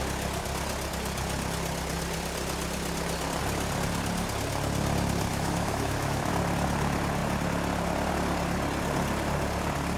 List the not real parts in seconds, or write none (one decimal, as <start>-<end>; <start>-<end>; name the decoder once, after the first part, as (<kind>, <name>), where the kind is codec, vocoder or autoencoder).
5.3-6.3 (autoencoder, DAC-VAE)